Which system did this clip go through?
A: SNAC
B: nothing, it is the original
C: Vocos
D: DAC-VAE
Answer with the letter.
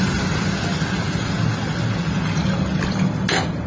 B